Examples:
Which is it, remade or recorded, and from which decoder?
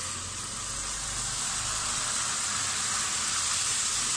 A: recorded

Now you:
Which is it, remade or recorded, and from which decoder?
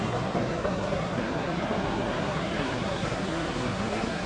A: remade, codec, SNAC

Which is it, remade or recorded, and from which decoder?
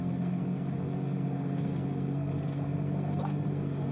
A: remade, codec, SNAC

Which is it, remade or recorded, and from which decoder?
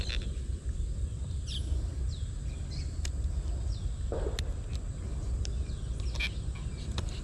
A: recorded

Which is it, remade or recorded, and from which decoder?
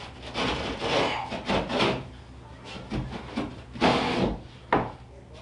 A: recorded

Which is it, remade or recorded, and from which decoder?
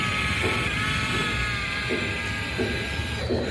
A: recorded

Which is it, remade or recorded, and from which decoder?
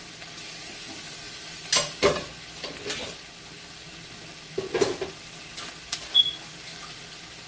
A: recorded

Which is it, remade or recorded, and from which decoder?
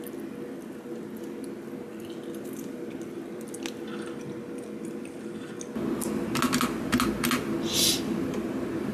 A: recorded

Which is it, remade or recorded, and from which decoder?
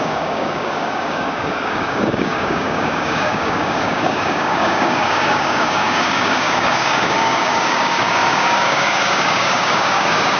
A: remade, codec, DAC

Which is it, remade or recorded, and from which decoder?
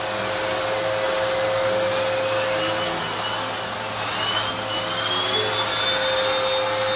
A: recorded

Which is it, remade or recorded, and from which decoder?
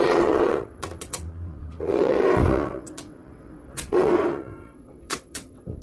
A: remade, vocoder, WaveNeXt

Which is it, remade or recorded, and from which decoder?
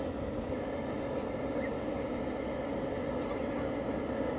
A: recorded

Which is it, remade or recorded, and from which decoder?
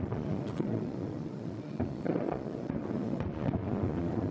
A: remade, vocoder, Vocos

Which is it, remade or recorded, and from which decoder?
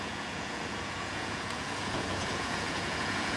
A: remade, vocoder, Vocos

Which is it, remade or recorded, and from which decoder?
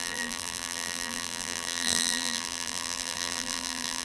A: remade, vocoder, BigVGAN v2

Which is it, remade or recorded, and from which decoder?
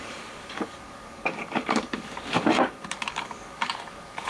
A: remade, codec, DAC